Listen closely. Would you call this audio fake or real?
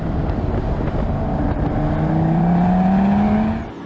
real